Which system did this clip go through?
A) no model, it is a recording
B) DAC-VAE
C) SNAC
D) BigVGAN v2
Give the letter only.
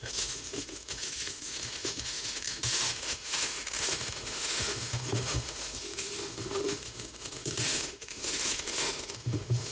B